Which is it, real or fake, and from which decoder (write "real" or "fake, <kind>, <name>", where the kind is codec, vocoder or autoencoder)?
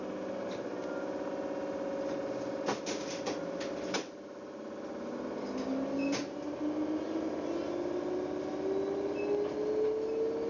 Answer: real